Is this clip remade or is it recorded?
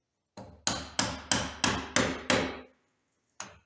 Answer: recorded